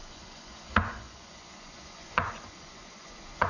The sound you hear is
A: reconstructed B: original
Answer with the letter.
A